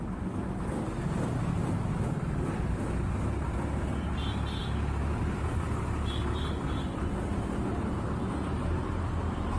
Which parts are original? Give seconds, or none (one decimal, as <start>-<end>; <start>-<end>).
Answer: 0.0-9.6